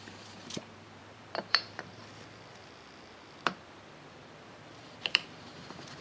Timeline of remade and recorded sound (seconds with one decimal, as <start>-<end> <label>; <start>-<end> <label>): 0.0-2.0 remade; 2.0-4.1 recorded; 4.1-6.0 remade